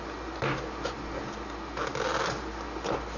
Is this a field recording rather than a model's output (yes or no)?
yes